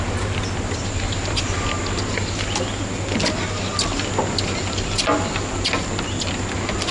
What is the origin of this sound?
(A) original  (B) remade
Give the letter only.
A